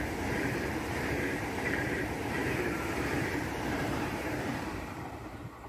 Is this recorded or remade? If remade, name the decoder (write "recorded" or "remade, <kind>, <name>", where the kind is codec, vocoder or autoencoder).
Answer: remade, vocoder, BigVGAN v2